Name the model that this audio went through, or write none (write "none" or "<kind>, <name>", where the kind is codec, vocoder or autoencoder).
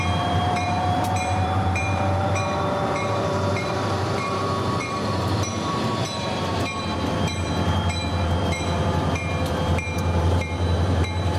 vocoder, BigVGAN v2